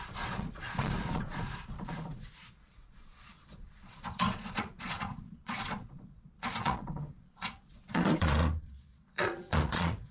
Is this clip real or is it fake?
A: fake